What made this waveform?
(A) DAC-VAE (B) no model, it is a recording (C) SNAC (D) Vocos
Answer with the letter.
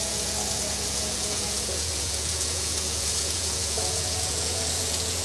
D